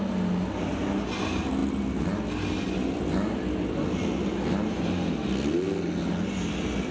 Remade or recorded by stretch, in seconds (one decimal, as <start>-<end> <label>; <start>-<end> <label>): 0.0-6.9 recorded